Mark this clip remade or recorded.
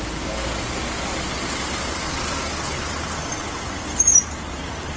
recorded